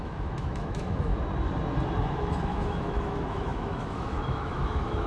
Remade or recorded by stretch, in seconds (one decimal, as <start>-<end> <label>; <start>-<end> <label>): 0.0-1.1 remade; 1.1-2.0 recorded; 2.0-5.1 remade